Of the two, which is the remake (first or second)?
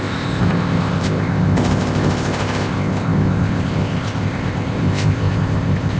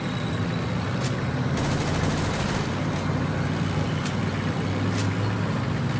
first